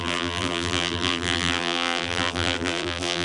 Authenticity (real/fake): fake